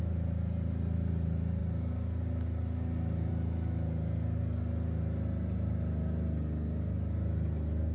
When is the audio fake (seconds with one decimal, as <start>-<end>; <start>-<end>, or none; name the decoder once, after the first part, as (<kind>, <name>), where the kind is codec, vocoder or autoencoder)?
none

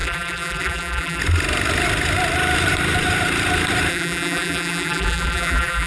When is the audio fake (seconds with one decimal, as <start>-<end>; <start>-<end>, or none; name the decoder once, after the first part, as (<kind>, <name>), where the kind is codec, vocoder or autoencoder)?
0.0-1.2 (vocoder, BigVGAN v2); 3.9-5.9

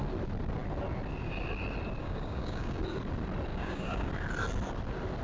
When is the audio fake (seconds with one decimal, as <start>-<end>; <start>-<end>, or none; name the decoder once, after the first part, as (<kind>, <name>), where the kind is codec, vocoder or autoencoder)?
2.0-2.8 (codec, DAC); 3.5-4.1

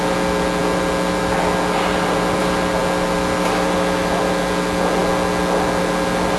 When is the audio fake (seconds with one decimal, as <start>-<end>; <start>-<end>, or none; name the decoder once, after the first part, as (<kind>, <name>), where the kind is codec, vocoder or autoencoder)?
none

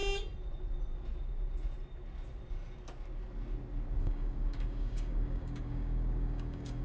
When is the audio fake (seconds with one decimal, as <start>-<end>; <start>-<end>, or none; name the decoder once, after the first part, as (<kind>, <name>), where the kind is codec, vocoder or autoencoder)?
4.0-6.8 (codec, DAC)

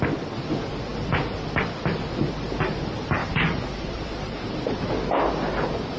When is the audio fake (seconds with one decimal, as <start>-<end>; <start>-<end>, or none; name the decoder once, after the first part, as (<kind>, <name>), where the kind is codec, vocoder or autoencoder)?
3.2-4.5 (vocoder, BigVGAN v2)

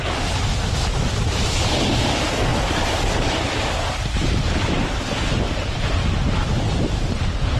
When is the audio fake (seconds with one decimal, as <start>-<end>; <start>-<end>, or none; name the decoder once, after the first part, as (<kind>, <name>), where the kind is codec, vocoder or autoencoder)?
2.5-7.1 (vocoder, BigVGAN v2)